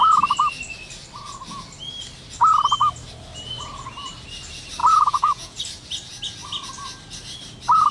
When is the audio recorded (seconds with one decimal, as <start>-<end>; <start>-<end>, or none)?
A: 0.0-4.8; 5.6-7.9